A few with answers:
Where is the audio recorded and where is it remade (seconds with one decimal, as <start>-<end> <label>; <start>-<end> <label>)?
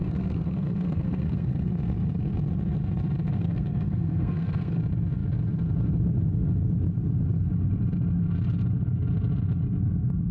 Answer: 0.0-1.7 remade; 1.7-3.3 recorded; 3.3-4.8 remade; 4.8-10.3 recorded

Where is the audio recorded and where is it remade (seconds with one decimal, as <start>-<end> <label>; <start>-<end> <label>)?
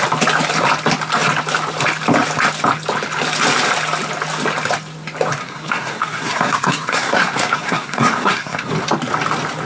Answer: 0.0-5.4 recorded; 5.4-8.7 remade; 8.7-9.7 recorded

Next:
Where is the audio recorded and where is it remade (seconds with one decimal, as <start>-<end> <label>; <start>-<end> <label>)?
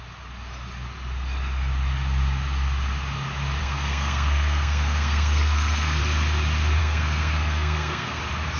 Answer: 0.0-3.6 recorded; 3.6-6.0 remade; 6.0-6.8 recorded; 6.8-8.2 remade; 8.2-8.6 recorded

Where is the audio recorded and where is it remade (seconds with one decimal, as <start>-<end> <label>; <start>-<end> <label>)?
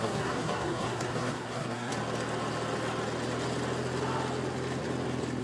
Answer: 0.0-1.9 remade; 1.9-5.4 recorded